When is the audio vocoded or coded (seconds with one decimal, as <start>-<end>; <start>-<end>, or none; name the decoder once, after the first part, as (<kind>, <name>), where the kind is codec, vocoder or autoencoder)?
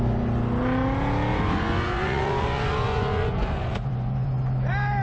1.3-4.3 (vocoder, Vocos)